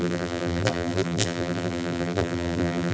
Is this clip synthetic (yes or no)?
yes